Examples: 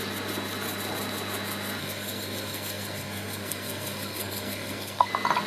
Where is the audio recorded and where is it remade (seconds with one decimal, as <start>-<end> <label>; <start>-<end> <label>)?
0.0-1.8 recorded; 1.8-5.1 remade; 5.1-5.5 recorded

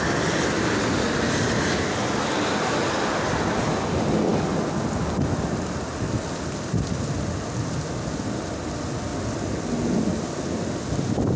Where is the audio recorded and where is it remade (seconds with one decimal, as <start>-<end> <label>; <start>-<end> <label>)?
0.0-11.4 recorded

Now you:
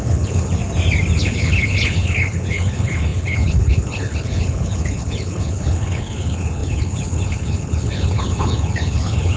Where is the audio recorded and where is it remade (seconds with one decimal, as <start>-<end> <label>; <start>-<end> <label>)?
0.0-0.6 remade; 0.6-1.2 recorded; 1.2-9.4 remade

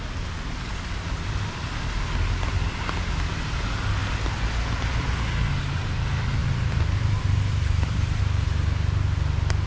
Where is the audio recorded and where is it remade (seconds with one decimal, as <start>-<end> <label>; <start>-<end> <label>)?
0.0-6.4 recorded; 6.4-8.2 remade; 8.2-9.7 recorded

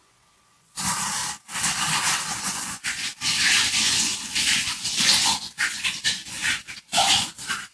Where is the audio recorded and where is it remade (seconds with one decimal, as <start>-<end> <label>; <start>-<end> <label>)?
0.0-1.2 remade; 1.2-2.4 recorded; 2.4-7.7 remade

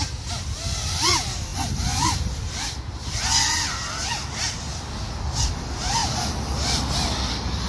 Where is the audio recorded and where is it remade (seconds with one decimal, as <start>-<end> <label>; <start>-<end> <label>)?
0.0-7.7 recorded

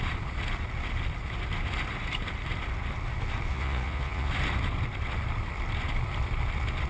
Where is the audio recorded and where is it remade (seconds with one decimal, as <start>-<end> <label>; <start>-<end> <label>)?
0.0-3.5 recorded; 3.5-4.3 remade; 4.3-6.9 recorded